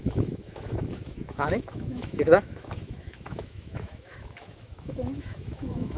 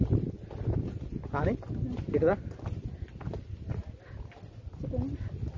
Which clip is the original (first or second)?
second